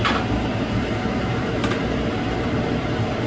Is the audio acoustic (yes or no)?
no